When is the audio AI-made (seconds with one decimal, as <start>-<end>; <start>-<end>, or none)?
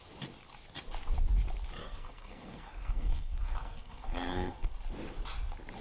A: 1.8-4.7